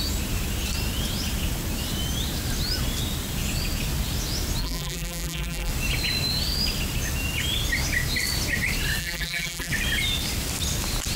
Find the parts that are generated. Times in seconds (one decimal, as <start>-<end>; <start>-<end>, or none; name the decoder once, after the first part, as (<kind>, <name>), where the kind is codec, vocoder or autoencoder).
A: 4.6-5.7 (vocoder, BigVGAN v2); 9.0-9.7